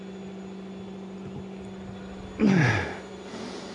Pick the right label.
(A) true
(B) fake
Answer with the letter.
A